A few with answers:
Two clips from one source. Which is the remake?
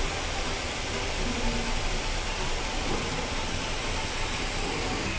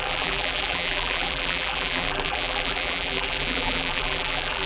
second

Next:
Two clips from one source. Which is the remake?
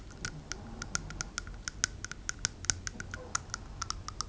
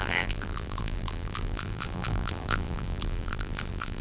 second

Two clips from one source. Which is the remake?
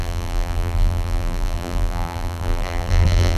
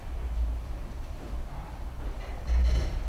first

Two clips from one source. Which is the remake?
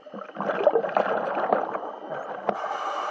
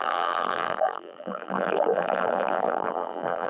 second